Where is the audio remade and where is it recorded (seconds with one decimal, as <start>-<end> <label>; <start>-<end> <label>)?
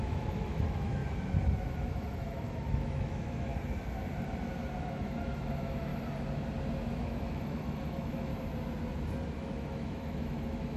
0.0-1.0 remade; 1.0-1.7 recorded; 1.7-3.5 remade; 3.5-4.8 recorded; 4.8-5.9 remade; 5.9-7.0 recorded; 7.0-8.3 remade; 8.3-9.4 recorded; 9.4-10.8 remade